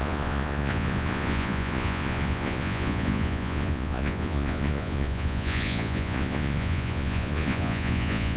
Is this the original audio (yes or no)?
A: no